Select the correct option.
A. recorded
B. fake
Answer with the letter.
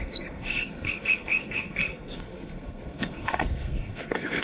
B